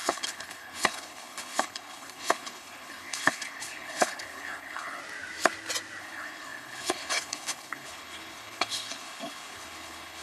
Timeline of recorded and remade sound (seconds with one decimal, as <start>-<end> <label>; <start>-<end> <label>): 0.0-5.0 remade; 5.0-6.0 recorded; 6.0-10.2 remade